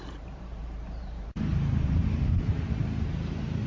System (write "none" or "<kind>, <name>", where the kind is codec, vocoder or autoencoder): vocoder, BigVGAN v2